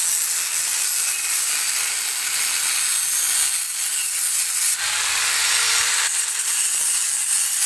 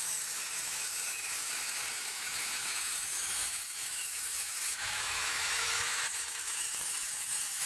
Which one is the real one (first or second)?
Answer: first